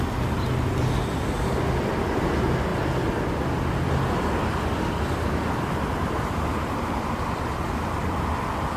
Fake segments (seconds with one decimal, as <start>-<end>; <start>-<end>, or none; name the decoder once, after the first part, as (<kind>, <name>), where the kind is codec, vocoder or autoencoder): none